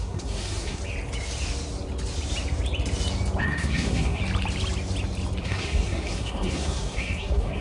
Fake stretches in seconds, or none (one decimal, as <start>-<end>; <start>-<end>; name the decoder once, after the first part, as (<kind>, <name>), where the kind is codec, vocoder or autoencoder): 0.0-0.8 (codec, SNAC); 3.4-4.2; 5.4-7.6